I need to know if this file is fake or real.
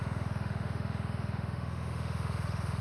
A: fake